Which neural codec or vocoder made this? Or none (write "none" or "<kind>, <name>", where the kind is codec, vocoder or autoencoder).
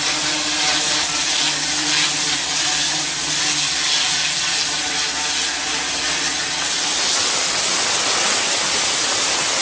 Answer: none